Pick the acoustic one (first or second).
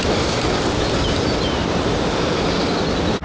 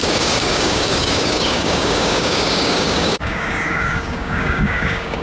first